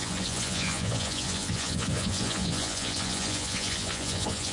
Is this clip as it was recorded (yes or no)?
no